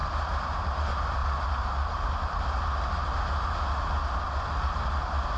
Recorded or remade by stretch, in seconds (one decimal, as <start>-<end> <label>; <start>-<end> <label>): 0.0-5.4 recorded